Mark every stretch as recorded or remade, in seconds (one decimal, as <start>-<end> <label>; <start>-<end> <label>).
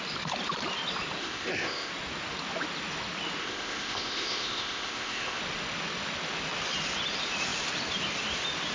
0.0-1.2 recorded; 1.2-1.9 remade; 1.9-3.4 recorded; 3.4-5.4 remade; 5.4-8.7 recorded